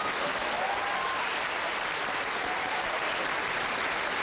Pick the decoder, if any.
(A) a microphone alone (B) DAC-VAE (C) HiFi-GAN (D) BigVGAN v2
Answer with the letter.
A